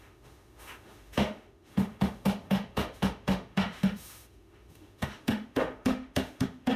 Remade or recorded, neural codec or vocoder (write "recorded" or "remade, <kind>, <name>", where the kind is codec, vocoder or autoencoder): remade, autoencoder, DAC-VAE